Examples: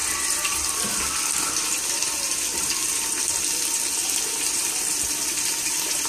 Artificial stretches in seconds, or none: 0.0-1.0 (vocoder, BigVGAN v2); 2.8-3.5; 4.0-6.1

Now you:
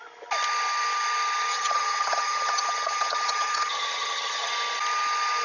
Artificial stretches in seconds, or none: 1.5-4.5 (vocoder, HiFi-GAN)

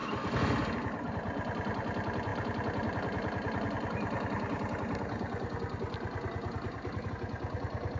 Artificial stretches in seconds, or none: 0.0-1.1 (vocoder, BigVGAN v2); 2.3-7.1

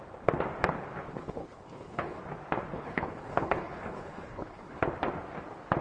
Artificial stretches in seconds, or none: 1.1-2.2 (codec, HILCodec); 2.7-4.8

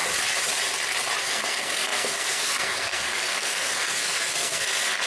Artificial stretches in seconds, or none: 1.2-5.1 (codec, SNAC)

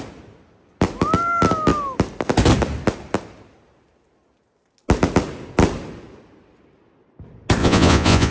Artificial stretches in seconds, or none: 7.6-8.3 (vocoder, Vocos)

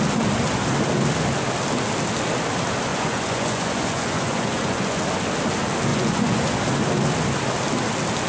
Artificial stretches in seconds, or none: 2.9-5.0 (vocoder, Vocos); 5.9-6.4

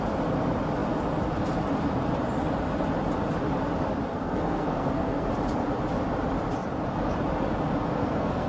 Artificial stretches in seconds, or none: 4.1-5.3 (codec, SNAC); 8.0-8.5